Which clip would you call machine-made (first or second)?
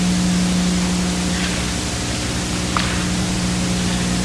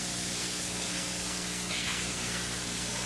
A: second